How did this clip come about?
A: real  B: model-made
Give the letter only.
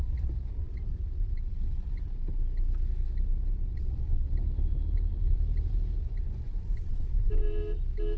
A